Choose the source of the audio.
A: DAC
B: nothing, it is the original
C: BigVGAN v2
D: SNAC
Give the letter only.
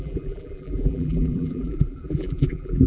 C